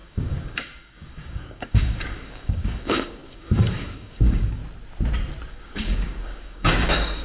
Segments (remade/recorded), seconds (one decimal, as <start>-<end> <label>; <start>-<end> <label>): 0.0-4.6 remade; 4.6-5.5 recorded; 5.5-7.2 remade